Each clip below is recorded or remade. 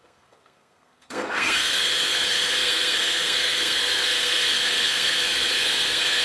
remade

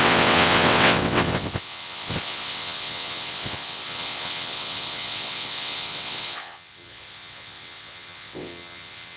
remade